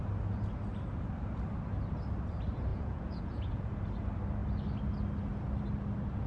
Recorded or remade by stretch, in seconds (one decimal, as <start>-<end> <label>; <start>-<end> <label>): 0.0-2.7 recorded; 2.7-3.7 remade; 3.7-6.3 recorded